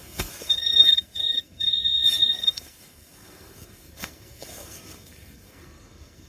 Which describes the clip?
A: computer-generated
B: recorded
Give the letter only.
A